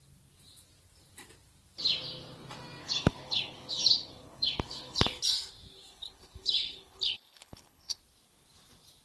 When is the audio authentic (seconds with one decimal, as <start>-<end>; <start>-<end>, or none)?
0.0-2.8; 5.2-5.9; 8.0-9.0